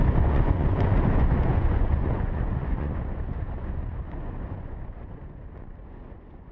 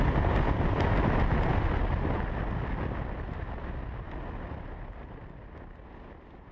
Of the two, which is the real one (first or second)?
second